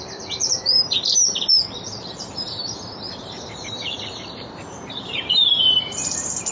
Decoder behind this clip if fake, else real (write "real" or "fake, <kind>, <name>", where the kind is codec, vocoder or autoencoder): fake, vocoder, BigVGAN v2